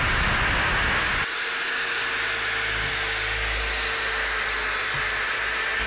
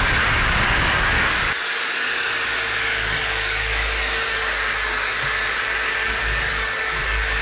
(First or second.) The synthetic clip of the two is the second